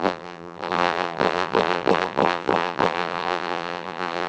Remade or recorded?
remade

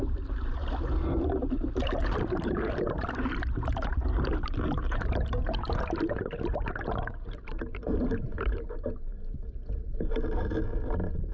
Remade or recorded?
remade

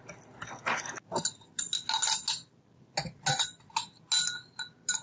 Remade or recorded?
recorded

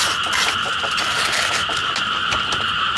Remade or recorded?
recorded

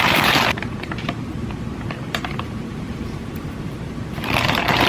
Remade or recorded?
remade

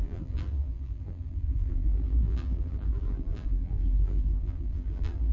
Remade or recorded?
remade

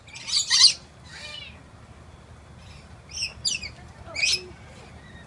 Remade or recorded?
recorded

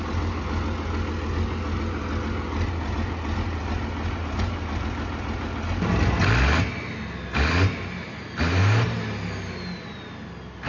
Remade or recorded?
recorded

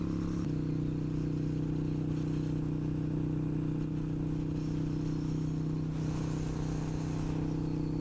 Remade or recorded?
recorded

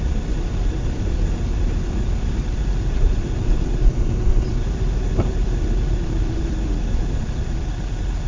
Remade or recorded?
remade